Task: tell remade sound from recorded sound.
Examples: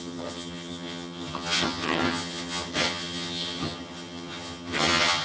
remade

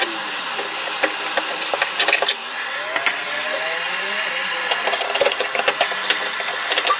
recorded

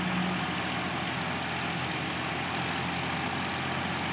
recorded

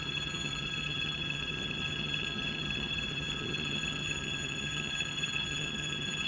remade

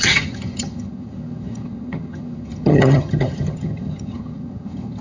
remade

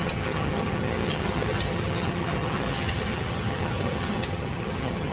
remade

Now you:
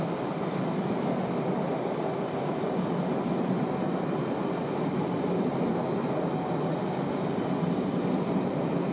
recorded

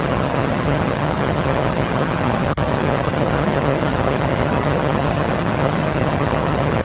remade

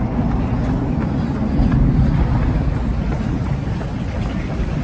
recorded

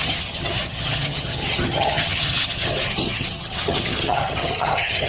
remade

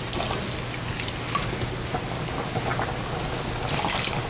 recorded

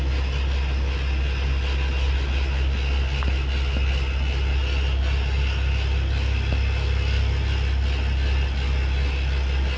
recorded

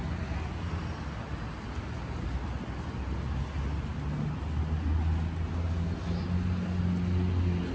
recorded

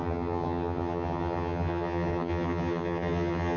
remade